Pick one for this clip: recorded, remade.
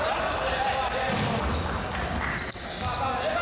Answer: recorded